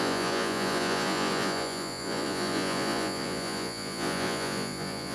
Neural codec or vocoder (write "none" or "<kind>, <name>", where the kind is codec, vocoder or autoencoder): vocoder, Vocos